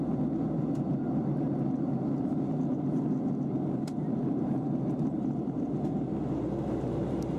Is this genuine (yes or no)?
yes